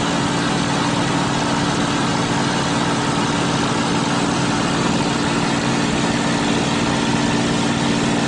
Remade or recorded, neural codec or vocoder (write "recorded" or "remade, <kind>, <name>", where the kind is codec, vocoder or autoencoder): recorded